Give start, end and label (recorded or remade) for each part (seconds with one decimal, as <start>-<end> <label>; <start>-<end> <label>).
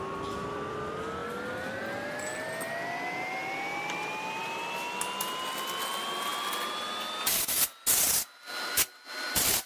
0.0-9.7 recorded